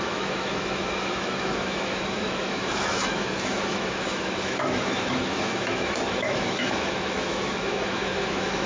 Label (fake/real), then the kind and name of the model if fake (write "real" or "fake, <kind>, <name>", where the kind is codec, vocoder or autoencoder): fake, autoencoder, DAC-VAE